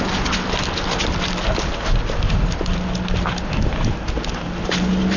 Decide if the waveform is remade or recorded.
recorded